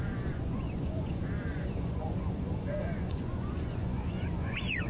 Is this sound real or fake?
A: fake